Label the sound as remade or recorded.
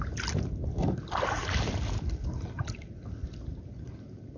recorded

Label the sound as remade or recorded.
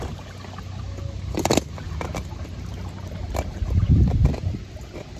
recorded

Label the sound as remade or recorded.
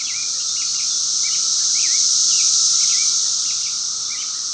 recorded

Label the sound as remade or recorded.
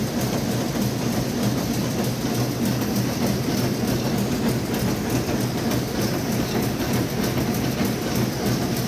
recorded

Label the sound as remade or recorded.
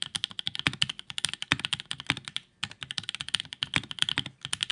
recorded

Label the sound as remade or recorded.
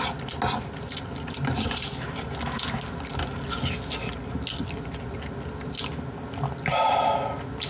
recorded